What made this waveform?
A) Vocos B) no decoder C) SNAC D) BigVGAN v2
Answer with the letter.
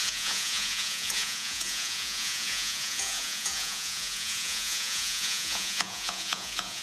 A